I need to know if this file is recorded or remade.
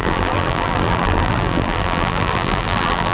remade